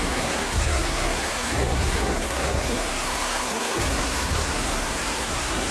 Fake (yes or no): yes